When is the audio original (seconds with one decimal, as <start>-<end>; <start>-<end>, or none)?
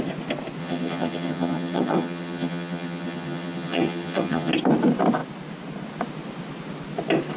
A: 0.0-0.6; 4.5-7.4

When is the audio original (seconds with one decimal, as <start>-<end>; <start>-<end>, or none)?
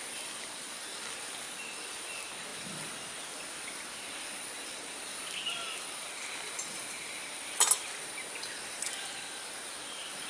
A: 0.0-10.3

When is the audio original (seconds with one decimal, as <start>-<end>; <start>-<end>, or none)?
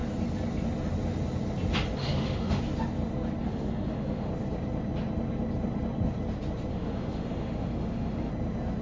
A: 0.0-2.0; 2.6-3.4; 4.3-6.7; 8.3-8.8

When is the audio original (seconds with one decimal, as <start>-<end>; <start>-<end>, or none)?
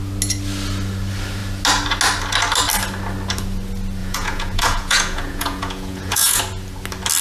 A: 0.0-4.0; 6.4-7.2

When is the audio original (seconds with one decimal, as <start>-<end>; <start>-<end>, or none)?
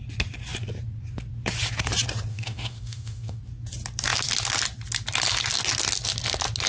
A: 0.0-2.3; 3.4-6.7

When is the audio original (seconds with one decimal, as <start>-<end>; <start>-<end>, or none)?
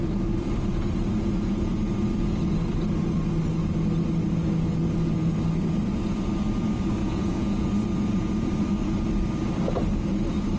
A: 0.0-7.0; 7.6-10.6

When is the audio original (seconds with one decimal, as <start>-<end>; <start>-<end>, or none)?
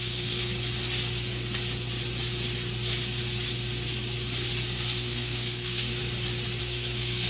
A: 0.5-4.7; 6.0-6.6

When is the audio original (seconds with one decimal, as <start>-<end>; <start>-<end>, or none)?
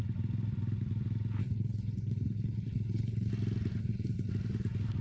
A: 0.0-1.4; 3.3-3.8; 4.3-5.0